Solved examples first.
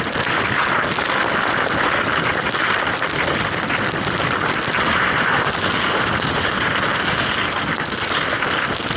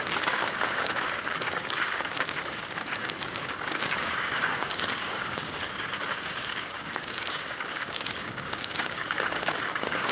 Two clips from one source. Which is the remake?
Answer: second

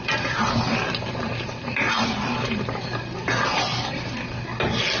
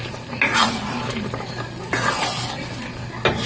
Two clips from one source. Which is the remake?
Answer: first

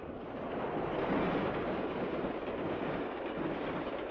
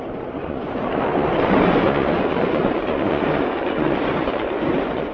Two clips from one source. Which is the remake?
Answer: second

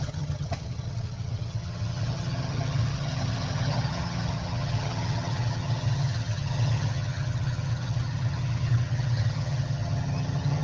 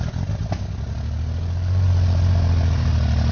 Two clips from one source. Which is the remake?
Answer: first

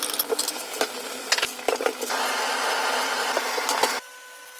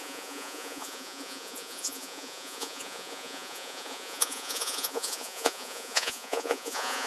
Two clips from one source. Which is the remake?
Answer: second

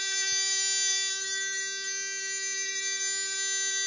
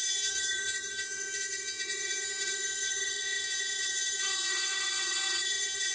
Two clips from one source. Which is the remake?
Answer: second